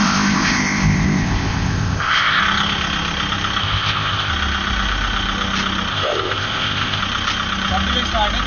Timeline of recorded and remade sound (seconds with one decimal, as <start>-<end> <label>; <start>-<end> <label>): 0.0-2.4 remade; 2.4-3.6 recorded; 3.6-4.3 remade; 4.3-5.9 recorded; 5.9-7.0 remade; 7.0-8.5 recorded